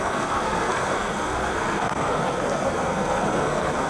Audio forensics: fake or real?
fake